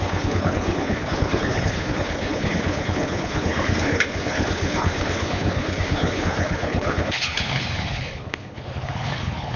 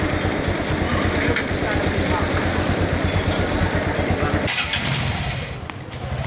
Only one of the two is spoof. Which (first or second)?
first